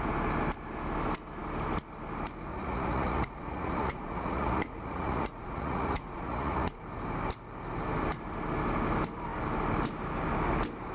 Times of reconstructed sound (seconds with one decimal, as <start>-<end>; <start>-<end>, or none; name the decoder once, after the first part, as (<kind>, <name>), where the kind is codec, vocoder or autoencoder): 2.5-6.8 (vocoder, Vocos)